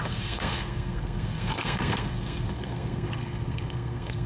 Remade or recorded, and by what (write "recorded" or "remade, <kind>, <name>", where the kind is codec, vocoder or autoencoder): remade, codec, SNAC